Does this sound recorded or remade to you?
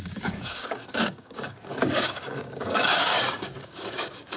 remade